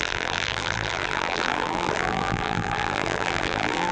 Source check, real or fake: fake